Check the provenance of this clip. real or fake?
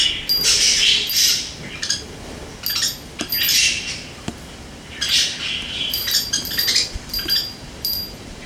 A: real